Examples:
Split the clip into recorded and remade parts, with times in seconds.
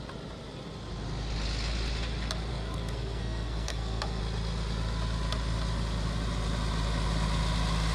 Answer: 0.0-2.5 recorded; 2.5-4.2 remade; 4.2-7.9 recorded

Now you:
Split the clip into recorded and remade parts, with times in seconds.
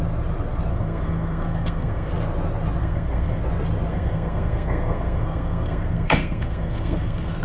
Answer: 0.0-0.7 recorded; 0.7-2.1 remade; 2.1-2.8 recorded; 2.8-3.4 remade; 3.4-3.9 recorded; 3.9-7.4 remade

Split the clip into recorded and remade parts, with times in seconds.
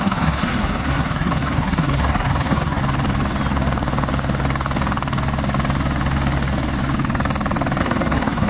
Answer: 0.0-2.8 remade; 2.8-7.8 recorded; 7.8-8.5 remade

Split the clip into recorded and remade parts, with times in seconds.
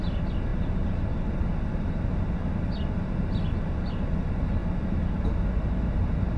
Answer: 0.0-6.4 recorded